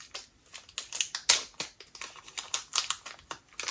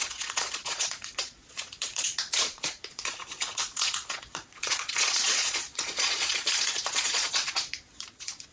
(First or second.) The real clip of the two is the first